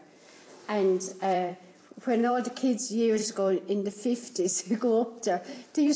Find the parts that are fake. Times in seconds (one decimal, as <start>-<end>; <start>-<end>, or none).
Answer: 1.1-1.8; 2.2-2.8; 3.2-4.6; 5.2-6.0